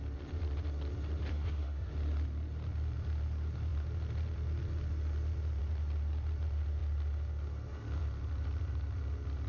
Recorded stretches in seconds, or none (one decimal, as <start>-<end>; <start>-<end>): 0.0-1.3; 1.9-9.5